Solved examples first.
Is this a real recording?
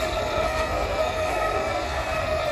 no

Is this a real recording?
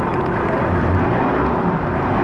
yes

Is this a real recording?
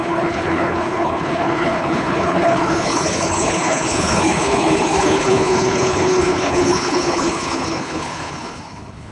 no